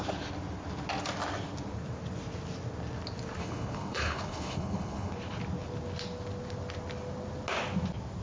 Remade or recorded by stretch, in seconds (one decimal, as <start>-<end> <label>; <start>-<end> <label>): 0.0-3.4 recorded; 3.4-5.1 remade; 5.1-8.2 recorded

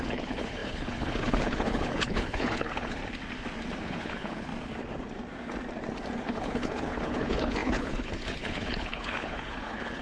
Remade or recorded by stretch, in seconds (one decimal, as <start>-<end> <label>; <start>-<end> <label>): 0.0-3.0 remade; 3.0-3.8 recorded; 3.8-4.5 remade; 4.5-6.2 recorded; 6.2-10.0 remade

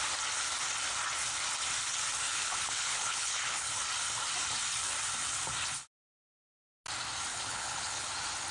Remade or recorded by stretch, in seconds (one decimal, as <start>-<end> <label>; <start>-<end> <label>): 0.0-2.3 recorded; 2.3-3.7 remade; 3.7-7.3 recorded; 7.3-8.1 remade; 8.1-8.5 recorded

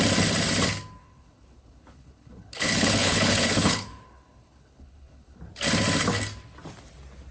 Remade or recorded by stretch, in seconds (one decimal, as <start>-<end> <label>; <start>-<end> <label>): 0.0-1.0 recorded; 1.0-5.4 remade; 5.4-7.3 recorded

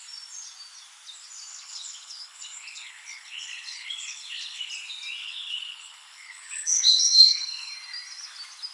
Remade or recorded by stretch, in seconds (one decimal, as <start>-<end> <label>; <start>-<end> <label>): 0.0-1.5 recorded; 1.5-4.7 remade; 4.7-5.2 recorded; 5.2-7.7 remade; 7.7-8.7 recorded

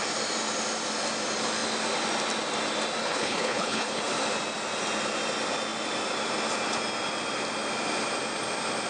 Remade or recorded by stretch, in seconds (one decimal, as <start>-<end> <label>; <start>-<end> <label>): 0.0-3.0 recorded; 3.0-4.0 remade; 4.0-8.9 recorded

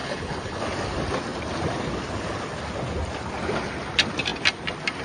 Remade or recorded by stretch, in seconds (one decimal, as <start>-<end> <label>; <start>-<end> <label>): 0.0-0.6 remade; 0.6-5.0 recorded

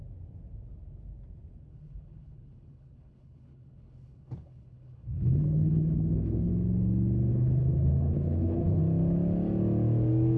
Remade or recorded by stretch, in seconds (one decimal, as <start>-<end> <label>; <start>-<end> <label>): 0.0-1.7 recorded; 1.7-6.5 remade; 6.5-7.3 recorded; 7.3-8.8 remade; 8.8-10.4 recorded